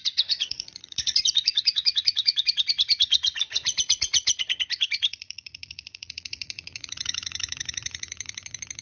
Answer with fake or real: fake